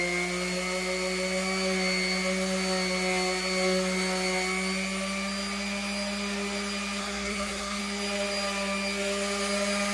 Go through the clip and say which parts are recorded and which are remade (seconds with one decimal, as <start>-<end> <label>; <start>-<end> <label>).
0.0-7.0 recorded; 7.0-7.8 remade; 7.8-9.9 recorded